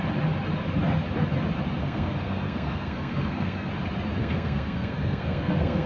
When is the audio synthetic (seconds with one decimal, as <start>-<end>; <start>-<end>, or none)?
1.8-3.7; 4.2-5.9